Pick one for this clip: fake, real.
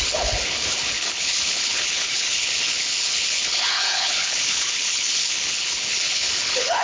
fake